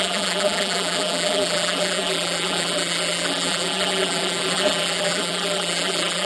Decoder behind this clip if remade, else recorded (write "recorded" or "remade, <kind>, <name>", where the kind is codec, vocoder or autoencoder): remade, vocoder, BigVGAN v2